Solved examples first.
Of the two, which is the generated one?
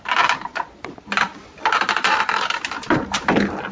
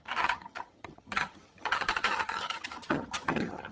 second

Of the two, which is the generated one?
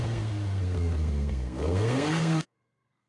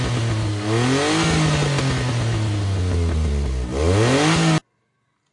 first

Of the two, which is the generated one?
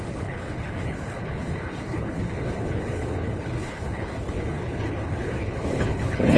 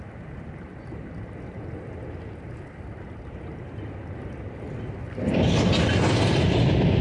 first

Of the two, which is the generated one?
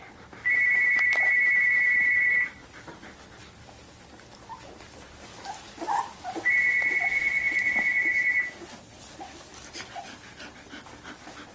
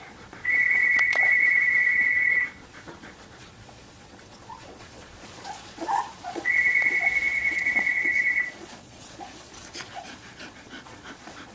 second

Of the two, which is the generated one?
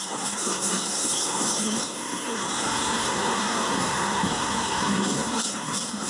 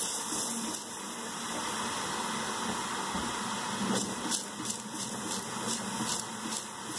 first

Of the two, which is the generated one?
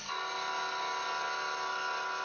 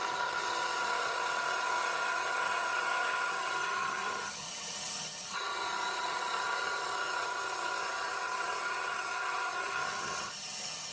second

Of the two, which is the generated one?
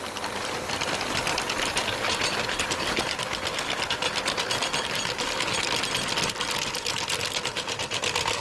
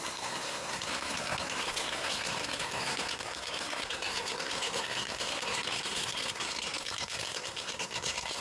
second